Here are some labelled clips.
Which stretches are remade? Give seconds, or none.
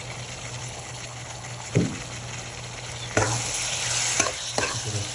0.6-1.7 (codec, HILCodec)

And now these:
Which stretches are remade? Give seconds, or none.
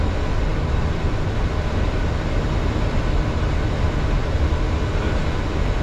none